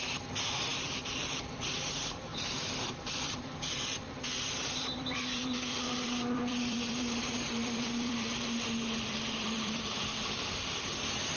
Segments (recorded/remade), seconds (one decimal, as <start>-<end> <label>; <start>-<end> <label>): 0.0-11.4 remade